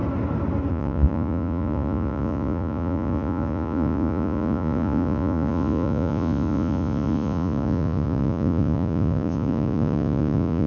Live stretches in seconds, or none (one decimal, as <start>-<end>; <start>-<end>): 0.0-0.7